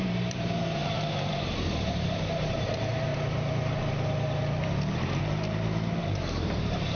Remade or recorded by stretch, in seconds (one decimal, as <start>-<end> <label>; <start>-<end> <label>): 0.0-3.1 remade; 3.1-5.2 recorded; 5.2-7.0 remade